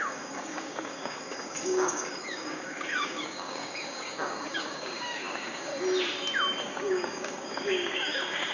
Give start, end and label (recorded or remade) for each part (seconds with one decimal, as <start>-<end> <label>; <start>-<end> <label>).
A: 0.0-5.7 remade; 5.7-6.6 recorded; 6.6-8.5 remade